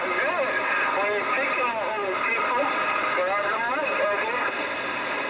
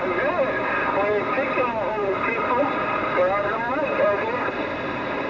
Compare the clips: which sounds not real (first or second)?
second